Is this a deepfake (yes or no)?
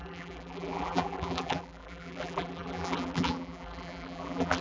yes